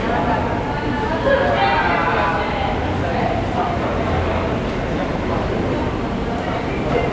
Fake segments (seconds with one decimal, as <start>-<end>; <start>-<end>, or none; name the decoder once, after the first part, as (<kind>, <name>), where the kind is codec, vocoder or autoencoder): 3.1-5.1 (vocoder, BigVGAN v2)